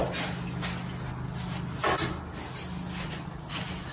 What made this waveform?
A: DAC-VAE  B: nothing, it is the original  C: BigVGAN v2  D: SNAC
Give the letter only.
B